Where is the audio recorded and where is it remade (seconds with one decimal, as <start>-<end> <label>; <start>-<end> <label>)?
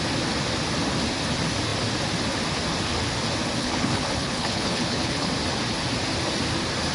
0.0-3.6 recorded; 3.6-5.3 remade; 5.3-6.9 recorded